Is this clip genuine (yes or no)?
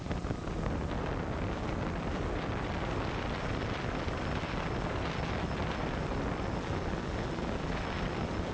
yes